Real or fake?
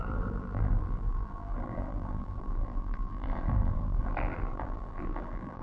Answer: fake